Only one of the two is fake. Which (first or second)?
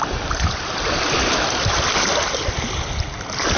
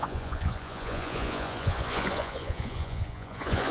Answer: second